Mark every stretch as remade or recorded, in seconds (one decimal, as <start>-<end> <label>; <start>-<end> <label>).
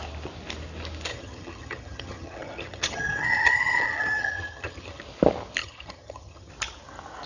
0.0-1.1 recorded; 1.1-5.0 remade; 5.0-5.6 recorded; 5.6-6.5 remade; 6.5-7.3 recorded